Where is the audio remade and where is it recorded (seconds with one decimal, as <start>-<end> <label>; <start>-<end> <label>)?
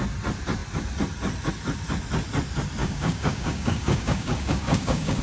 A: 0.0-2.8 recorded; 2.8-5.2 remade